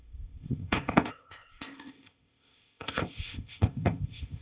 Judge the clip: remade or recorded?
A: remade